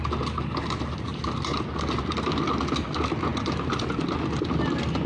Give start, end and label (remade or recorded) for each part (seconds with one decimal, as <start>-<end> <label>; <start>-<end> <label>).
0.0-5.1 recorded